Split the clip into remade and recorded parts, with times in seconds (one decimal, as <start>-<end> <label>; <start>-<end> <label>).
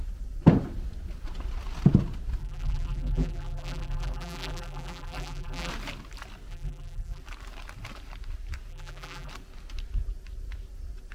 0.0-2.4 recorded; 2.4-5.7 remade; 5.7-6.5 recorded; 6.5-7.2 remade; 7.2-8.7 recorded; 8.7-9.3 remade; 9.3-11.1 recorded